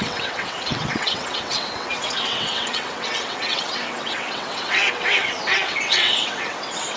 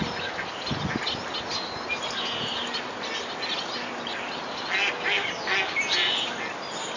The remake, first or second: first